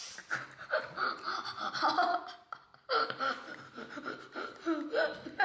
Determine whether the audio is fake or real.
real